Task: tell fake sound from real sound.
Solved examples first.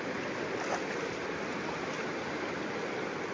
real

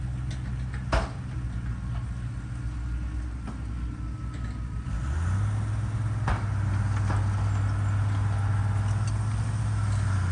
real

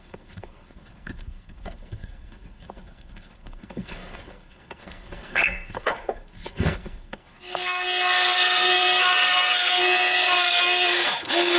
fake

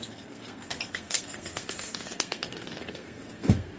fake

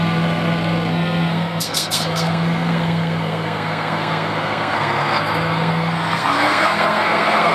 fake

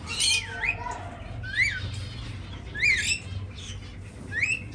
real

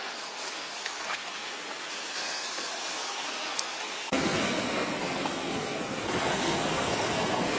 fake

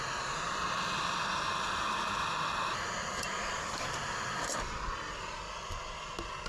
real